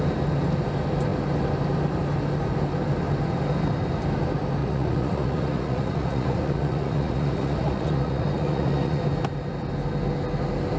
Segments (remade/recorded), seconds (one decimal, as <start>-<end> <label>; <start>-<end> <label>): 0.0-4.6 recorded; 4.6-9.0 remade; 9.0-10.8 recorded